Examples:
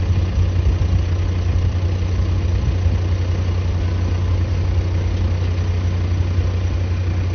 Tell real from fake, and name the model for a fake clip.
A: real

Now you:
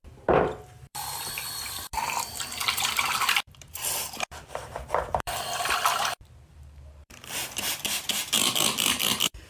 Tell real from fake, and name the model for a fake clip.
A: fake, vocoder, BigVGAN v2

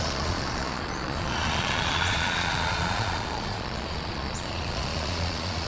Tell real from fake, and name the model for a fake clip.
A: fake, vocoder, Vocos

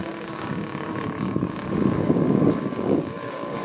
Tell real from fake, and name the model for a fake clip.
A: fake, codec, DAC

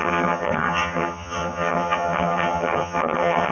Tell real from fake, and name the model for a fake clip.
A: fake, vocoder, HiFi-GAN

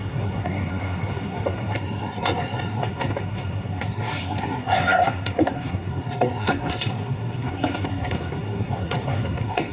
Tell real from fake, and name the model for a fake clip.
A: fake, codec, SNAC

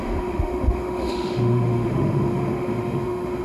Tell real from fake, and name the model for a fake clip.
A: fake, autoencoder, DAC-VAE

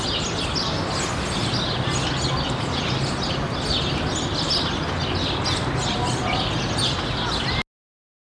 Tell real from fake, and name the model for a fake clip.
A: real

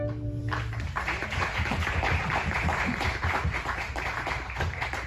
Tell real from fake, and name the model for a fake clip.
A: fake, vocoder, BigVGAN v2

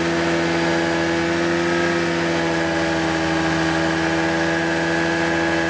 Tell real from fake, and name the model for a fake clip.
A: real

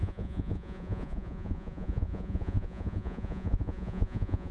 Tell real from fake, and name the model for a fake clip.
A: fake, vocoder, Vocos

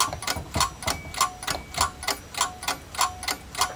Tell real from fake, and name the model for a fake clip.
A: real